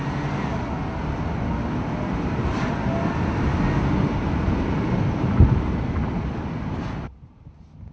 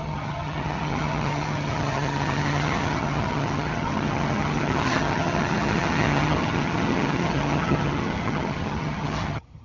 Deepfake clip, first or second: second